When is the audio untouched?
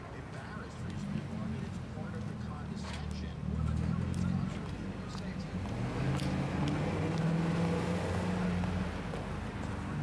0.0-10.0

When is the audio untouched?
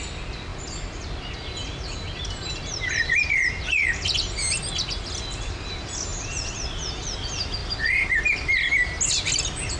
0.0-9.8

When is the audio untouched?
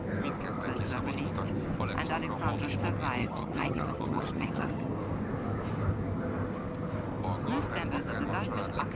0.0-3.2; 4.9-9.0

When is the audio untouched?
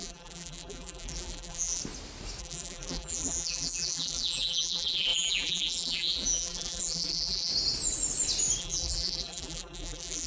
1.8-2.4; 7.5-8.6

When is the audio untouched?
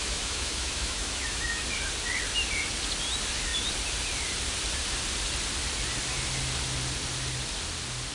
1.6-8.1